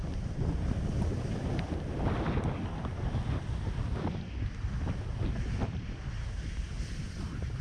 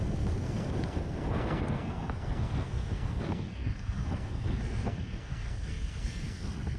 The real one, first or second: first